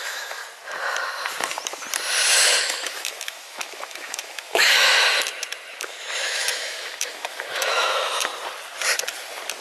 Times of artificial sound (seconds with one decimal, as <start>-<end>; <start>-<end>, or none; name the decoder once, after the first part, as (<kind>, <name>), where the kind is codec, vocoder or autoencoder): 0.0-0.4 (autoencoder, DAC-VAE); 2.6-4.9; 5.8-8.3